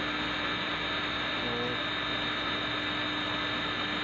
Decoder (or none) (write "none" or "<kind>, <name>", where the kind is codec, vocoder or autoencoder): none